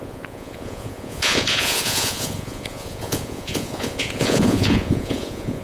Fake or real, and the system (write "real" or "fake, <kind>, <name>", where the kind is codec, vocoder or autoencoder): fake, vocoder, Vocos